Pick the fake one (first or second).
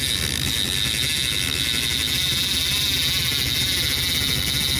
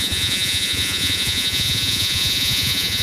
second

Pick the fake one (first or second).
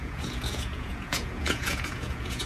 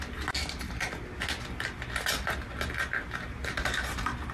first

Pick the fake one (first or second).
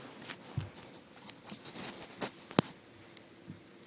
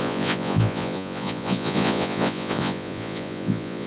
second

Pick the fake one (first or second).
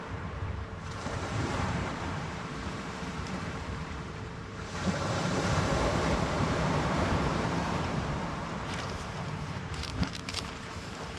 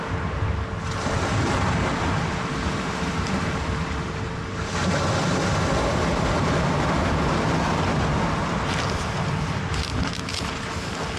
first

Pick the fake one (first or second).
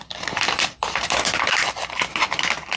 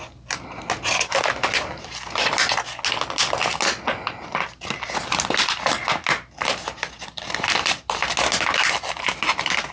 first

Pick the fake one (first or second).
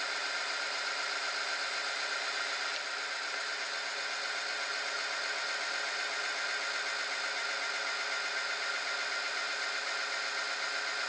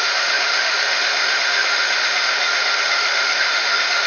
second